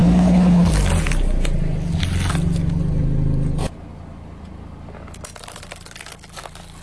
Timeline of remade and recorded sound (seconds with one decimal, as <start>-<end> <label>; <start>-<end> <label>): 0.0-0.7 remade; 0.7-6.8 recorded